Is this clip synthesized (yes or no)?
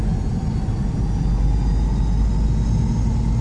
no